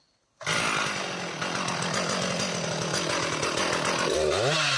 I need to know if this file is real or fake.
real